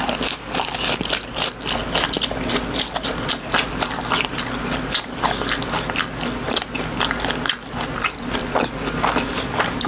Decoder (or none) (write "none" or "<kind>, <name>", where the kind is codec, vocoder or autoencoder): none